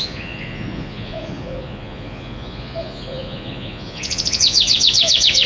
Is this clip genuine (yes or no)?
no